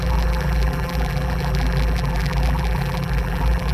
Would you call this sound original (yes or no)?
no